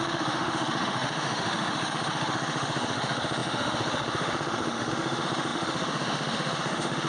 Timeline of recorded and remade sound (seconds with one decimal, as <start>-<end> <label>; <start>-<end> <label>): 0.0-7.1 remade